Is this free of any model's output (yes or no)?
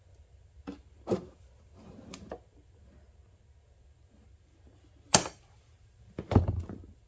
yes